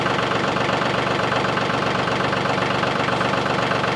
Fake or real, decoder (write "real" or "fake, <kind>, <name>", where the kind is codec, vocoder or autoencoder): fake, vocoder, BigVGAN v2